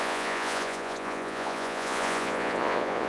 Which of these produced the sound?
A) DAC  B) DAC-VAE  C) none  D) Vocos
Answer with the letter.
D